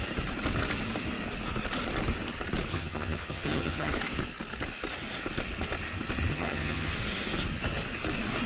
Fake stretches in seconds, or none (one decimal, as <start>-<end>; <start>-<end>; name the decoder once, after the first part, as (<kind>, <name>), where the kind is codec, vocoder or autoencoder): 2.7-3.9 (vocoder, HiFi-GAN); 6.3-6.9